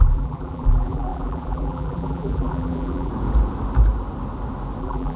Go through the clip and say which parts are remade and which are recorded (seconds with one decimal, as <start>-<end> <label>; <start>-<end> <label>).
0.0-3.1 remade; 3.1-4.8 recorded; 4.8-5.2 remade